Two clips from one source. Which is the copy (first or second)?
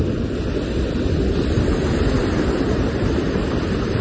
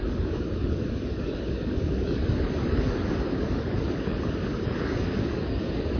second